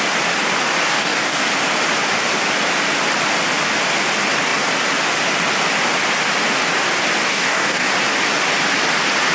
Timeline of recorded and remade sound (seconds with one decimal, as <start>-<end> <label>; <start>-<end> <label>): 0.0-0.8 recorded; 0.8-1.4 remade; 1.4-7.3 recorded; 7.3-7.9 remade; 7.9-9.3 recorded